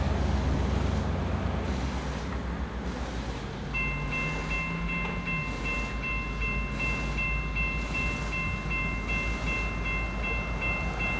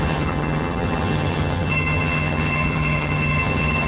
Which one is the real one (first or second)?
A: first